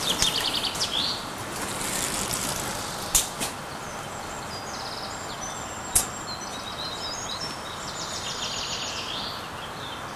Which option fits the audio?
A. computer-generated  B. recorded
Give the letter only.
B